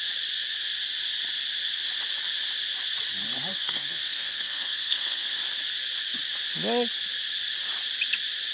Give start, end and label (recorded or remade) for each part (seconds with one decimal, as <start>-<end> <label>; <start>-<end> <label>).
0.0-3.5 recorded; 3.5-5.3 remade; 5.3-8.5 recorded